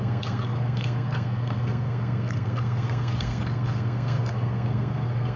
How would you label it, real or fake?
fake